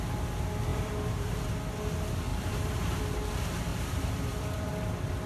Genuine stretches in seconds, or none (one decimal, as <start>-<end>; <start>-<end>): 0.0-0.7; 1.5-2.3; 3.0-3.7; 4.7-5.3